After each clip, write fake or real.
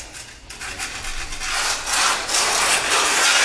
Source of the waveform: real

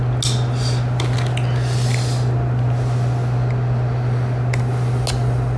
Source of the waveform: real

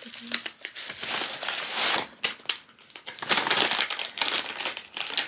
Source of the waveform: real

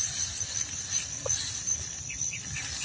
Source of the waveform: real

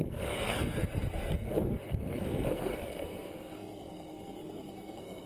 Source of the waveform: fake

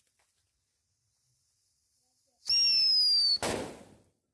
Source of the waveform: real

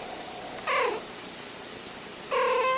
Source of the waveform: real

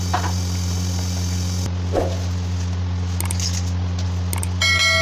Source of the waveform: real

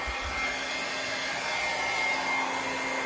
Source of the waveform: real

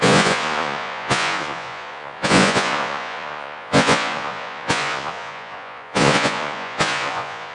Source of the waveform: fake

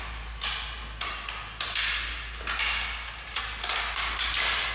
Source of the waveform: real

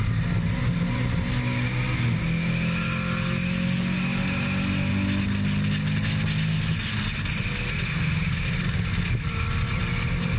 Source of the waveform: real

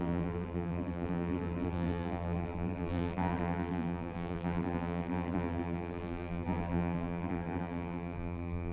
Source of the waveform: fake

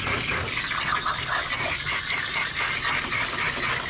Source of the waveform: real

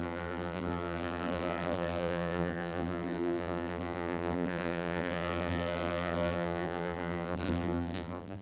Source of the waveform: fake